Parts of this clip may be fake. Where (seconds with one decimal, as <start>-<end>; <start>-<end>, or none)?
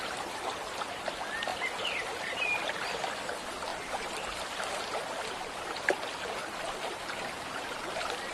1.5-2.9; 6.4-7.3